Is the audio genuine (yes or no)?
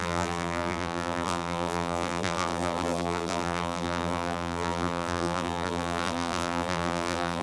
no